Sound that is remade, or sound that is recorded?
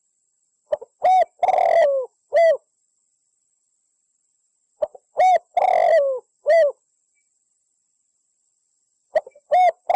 recorded